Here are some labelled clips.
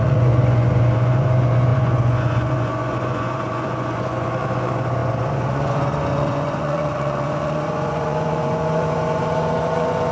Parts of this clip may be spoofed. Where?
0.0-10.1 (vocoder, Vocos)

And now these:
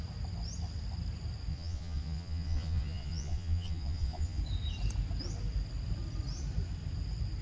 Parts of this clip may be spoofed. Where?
1.5-4.4 (vocoder, Vocos)

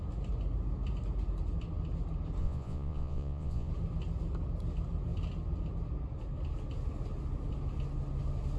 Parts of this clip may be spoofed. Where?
2.4-3.7 (vocoder, Vocos)

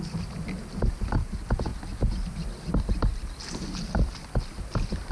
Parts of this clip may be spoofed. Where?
none

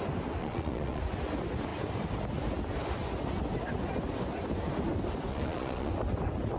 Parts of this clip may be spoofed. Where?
0.4-1.0 (vocoder, Vocos); 5.3-5.9

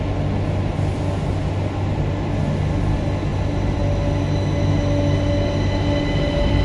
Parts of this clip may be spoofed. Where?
none

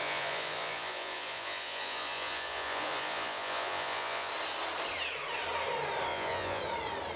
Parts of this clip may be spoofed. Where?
0.0-4.3 (vocoder, Vocos); 6.1-6.6

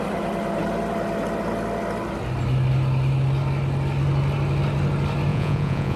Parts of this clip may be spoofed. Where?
5.3-6.0 (vocoder, Vocos)